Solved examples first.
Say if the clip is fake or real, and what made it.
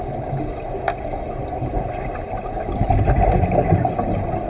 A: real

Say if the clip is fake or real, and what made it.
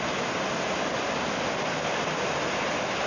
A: real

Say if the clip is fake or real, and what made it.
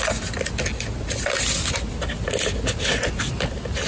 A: real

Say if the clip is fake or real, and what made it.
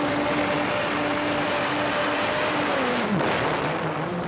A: real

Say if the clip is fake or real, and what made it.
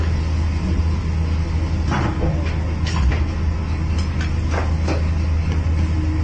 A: real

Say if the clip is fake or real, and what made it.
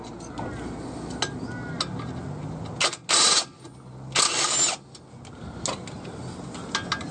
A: real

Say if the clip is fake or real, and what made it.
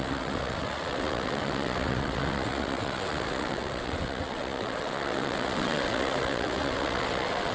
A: fake, vocoder, WaveNeXt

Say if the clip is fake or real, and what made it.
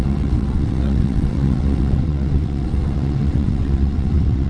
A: fake, vocoder, WaveNeXt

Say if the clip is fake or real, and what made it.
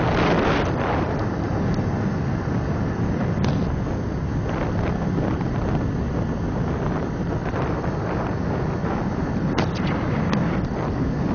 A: real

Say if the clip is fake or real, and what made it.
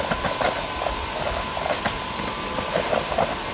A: real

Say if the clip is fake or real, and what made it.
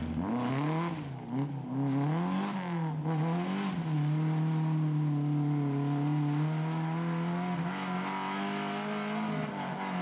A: real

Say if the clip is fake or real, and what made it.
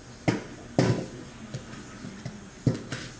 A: real